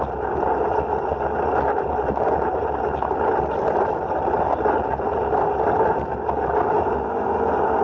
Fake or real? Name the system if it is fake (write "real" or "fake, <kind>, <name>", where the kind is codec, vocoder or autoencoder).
real